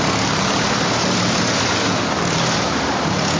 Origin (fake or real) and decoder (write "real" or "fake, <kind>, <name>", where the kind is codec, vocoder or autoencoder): real